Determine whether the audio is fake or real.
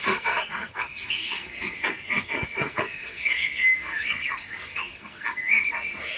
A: fake